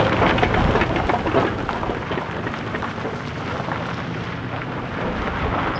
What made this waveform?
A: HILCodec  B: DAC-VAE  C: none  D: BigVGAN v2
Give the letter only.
C